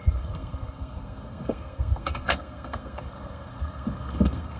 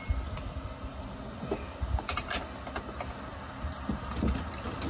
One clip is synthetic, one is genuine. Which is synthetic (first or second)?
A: first